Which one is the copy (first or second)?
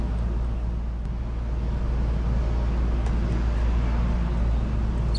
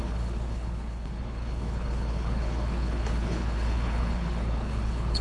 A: second